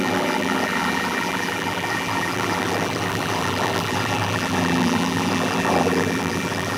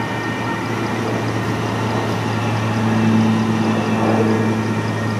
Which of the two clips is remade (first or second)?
first